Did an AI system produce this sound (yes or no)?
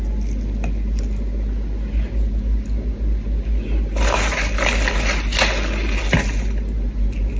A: no